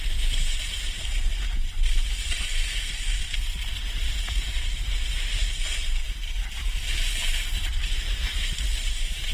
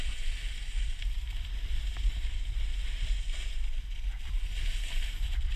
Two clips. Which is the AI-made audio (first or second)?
first